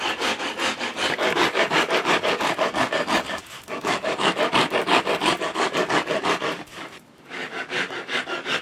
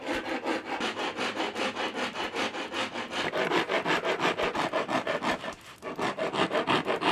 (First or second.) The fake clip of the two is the first